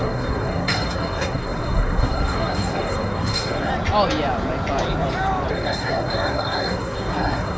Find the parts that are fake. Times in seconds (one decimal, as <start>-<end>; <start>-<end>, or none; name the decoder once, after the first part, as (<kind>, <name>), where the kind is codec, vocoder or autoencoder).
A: 0.0-3.7 (codec, SNAC); 5.5-7.6